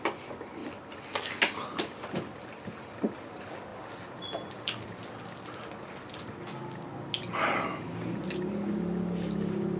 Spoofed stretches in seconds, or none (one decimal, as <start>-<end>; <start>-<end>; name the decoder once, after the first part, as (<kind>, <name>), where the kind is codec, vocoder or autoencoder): none